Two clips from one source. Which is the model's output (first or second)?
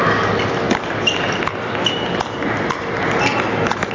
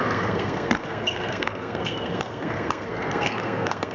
second